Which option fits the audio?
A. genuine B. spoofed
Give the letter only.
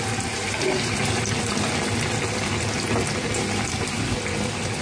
A